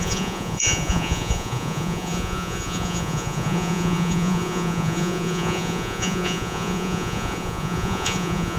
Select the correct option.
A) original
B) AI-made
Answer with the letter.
B